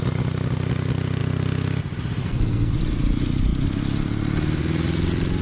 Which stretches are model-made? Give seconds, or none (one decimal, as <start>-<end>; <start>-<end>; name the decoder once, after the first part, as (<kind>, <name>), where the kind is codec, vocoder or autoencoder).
2.2-2.7 (codec, SNAC)